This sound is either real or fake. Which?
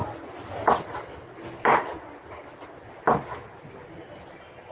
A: real